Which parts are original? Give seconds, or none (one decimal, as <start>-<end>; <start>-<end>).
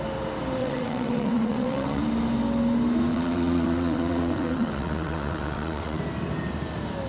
0.0-0.6; 2.0-3.1; 6.0-7.1